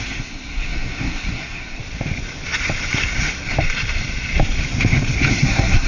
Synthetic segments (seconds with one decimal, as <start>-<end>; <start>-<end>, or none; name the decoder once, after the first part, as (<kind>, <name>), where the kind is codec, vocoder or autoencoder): 0.0-1.8 (codec, SNAC); 5.3-5.9